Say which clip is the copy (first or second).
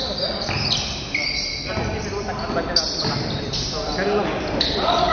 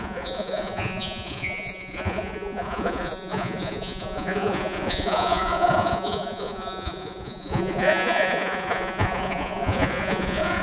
second